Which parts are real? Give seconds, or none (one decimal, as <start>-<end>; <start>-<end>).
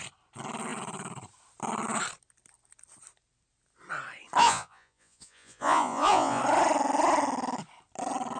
0.0-4.4; 6.4-8.4